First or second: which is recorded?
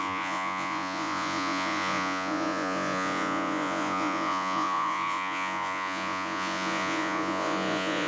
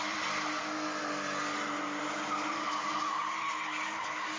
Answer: second